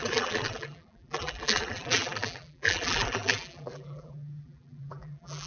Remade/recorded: remade